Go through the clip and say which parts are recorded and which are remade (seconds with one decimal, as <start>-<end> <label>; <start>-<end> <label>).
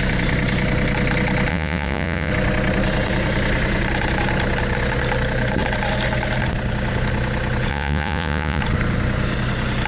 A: 0.0-1.5 recorded; 1.5-2.3 remade; 2.3-7.7 recorded; 7.7-8.6 remade; 8.6-9.9 recorded